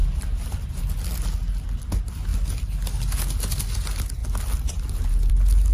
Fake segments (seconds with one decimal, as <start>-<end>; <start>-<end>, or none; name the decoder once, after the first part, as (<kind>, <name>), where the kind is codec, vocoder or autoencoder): 0.0-0.8 (vocoder, BigVGAN v2)